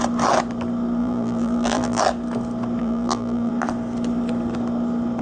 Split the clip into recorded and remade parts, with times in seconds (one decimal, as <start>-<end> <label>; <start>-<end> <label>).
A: 0.0-1.0 recorded; 1.0-2.0 remade; 2.0-2.8 recorded; 2.8-3.5 remade; 3.5-5.2 recorded